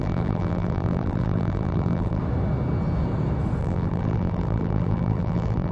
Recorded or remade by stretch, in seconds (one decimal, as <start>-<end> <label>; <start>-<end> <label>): 0.0-2.2 remade; 2.2-3.6 recorded; 3.6-5.7 remade